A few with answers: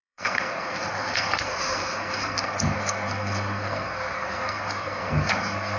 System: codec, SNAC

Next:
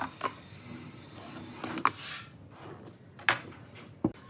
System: none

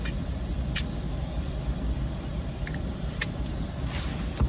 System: none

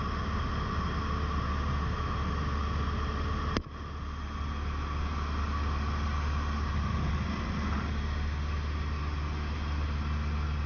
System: none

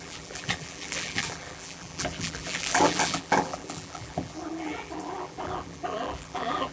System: vocoder, BigVGAN v2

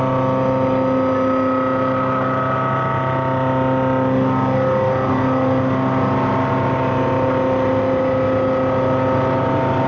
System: none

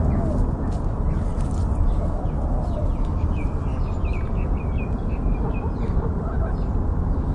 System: vocoder, BigVGAN v2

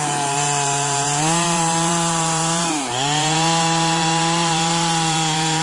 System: vocoder, BigVGAN v2